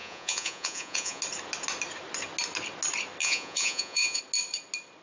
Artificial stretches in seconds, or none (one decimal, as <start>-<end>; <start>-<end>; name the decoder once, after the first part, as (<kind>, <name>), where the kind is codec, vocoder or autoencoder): 0.0-1.2 (vocoder, Vocos); 3.2-4.2